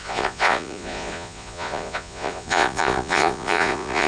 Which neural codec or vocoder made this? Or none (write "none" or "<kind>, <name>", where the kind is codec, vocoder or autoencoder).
vocoder, Vocos